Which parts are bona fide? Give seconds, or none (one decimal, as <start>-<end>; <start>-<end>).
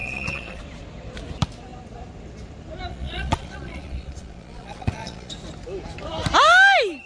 0.6-2.9; 5.3-7.1